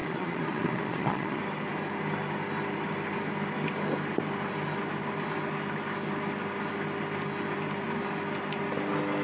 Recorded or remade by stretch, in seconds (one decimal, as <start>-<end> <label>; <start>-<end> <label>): 0.0-1.4 remade; 1.4-9.2 recorded